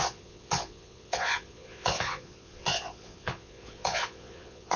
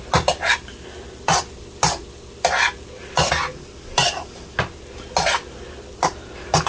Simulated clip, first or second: first